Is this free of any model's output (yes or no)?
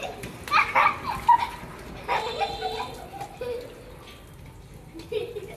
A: yes